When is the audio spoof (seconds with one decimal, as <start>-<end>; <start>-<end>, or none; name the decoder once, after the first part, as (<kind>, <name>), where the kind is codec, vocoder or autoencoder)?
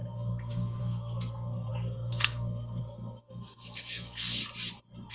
0.0-4.4 (codec, SNAC)